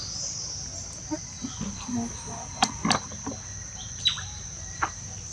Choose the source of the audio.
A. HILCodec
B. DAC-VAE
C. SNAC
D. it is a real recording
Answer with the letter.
D